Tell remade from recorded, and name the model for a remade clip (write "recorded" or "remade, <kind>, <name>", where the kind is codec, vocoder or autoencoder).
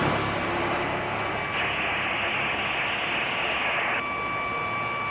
recorded